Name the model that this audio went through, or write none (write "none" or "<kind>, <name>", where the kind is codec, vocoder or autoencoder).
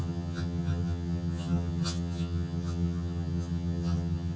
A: vocoder, HiFi-GAN